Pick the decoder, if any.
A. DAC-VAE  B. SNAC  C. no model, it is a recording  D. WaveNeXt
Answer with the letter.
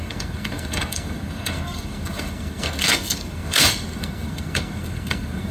B